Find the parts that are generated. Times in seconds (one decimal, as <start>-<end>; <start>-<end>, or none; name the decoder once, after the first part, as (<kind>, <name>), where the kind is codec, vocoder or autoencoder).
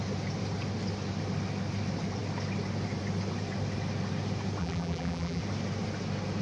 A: 4.6-5.4 (vocoder, BigVGAN v2)